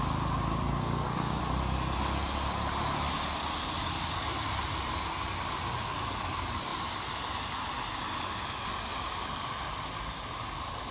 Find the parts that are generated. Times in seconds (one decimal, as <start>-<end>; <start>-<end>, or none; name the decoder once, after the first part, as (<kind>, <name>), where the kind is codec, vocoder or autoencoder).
0.8-1.4 (codec, SNAC)